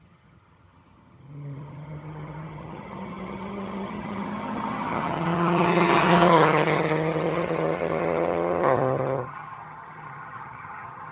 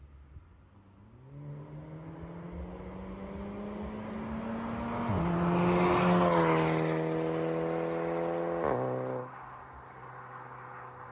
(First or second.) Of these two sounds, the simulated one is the first